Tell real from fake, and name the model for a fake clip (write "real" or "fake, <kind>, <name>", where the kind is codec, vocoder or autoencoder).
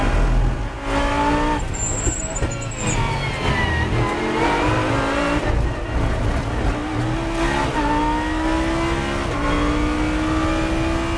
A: real